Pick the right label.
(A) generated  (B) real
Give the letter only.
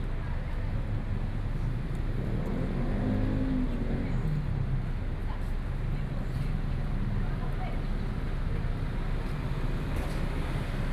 B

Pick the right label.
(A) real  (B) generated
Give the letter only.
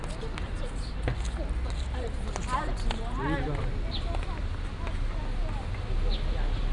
A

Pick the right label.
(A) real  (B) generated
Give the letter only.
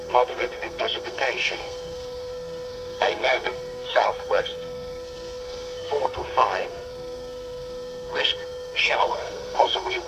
B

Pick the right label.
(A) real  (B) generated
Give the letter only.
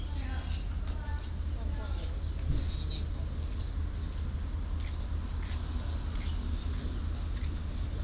A